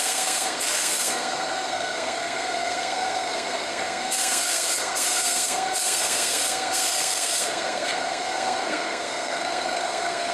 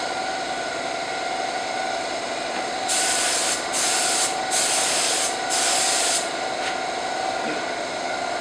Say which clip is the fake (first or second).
first